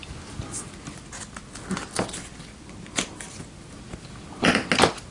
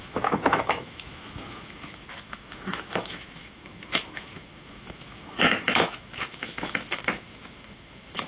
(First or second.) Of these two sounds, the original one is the first